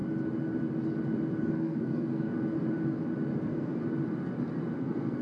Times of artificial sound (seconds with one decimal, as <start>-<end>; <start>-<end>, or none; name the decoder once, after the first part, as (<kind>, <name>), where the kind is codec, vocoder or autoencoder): 1.4-2.3 (codec, SNAC); 3.4-3.8; 4.8-5.2